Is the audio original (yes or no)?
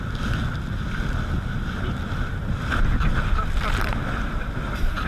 yes